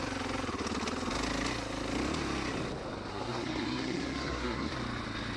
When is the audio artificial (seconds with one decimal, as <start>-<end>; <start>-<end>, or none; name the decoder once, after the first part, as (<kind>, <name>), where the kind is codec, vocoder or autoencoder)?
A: 3.1-4.7 (codec, SNAC)